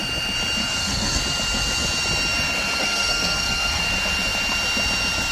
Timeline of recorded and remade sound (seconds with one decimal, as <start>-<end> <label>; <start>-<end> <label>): 0.0-0.6 recorded; 0.6-1.2 remade; 1.2-2.8 recorded; 2.8-3.8 remade; 3.8-5.3 recorded